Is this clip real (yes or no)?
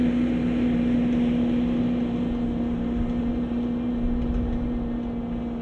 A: yes